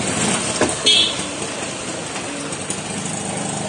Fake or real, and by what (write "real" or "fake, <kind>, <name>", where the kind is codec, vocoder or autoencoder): real